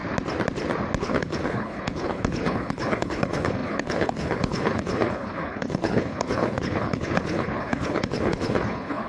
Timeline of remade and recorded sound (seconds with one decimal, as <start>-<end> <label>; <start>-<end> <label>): 0.0-1.0 recorded; 1.0-9.1 remade